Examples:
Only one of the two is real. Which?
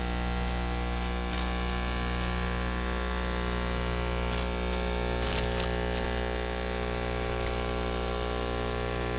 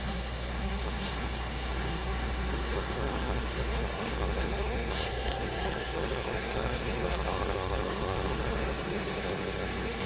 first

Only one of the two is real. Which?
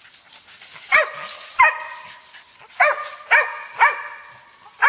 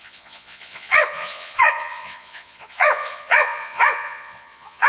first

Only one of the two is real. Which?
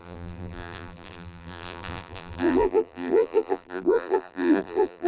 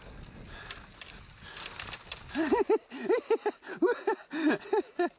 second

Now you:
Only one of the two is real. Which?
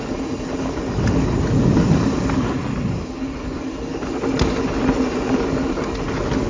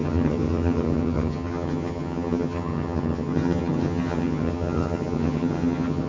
first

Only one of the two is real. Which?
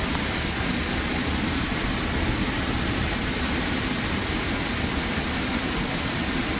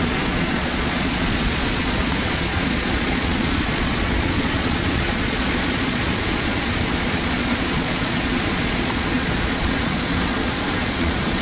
first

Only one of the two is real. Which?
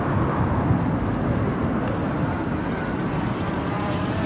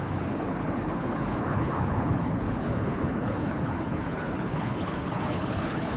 first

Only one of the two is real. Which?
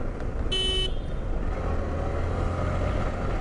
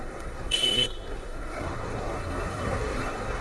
first